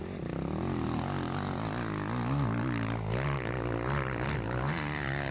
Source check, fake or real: real